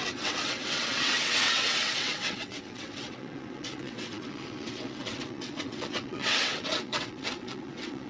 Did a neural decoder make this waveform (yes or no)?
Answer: yes